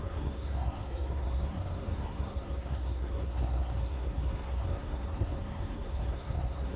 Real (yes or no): no